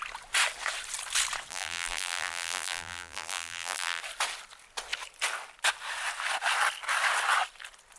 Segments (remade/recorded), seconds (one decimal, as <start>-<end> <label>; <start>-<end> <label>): 0.0-1.5 recorded; 1.5-4.0 remade; 4.0-8.0 recorded